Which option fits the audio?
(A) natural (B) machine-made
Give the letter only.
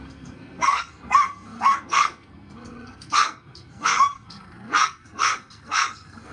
B